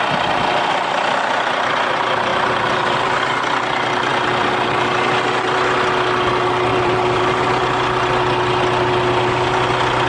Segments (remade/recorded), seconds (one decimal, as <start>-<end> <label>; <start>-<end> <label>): 0.0-2.3 recorded; 2.3-3.3 remade; 3.3-6.7 recorded; 6.7-7.2 remade; 7.2-10.1 recorded